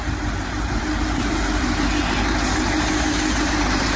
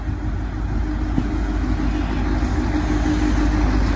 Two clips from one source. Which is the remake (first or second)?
first